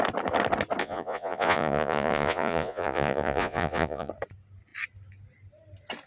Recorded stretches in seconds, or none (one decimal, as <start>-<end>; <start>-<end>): 0.0-0.8; 4.1-6.1

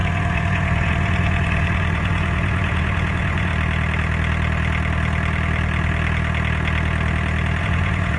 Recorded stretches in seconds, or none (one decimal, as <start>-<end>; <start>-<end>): 3.5-7.6

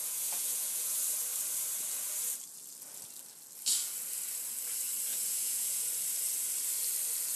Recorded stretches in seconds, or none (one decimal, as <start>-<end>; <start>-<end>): 1.0-5.1; 5.9-7.4

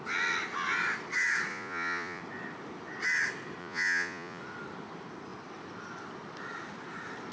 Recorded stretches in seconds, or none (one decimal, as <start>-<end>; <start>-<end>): 0.0-1.5; 2.2-3.6; 4.4-7.3

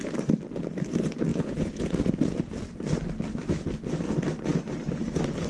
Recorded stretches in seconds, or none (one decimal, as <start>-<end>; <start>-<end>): 0.0-1.3; 2.4-5.5